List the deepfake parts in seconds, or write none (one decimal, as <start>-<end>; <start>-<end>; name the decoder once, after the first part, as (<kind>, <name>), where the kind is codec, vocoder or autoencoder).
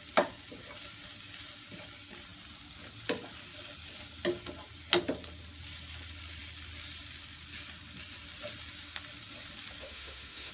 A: 9.8-10.5 (autoencoder, DAC-VAE)